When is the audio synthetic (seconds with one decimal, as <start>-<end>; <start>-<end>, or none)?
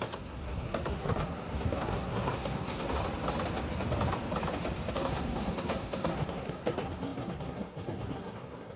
0.0-3.0; 4.9-8.8